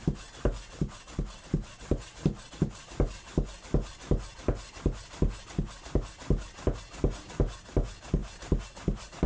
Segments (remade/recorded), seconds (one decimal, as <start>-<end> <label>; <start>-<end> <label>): 0.0-9.3 recorded